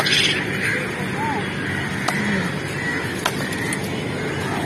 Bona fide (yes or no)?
yes